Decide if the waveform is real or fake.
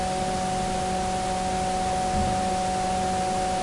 real